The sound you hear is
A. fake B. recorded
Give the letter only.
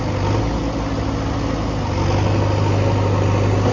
B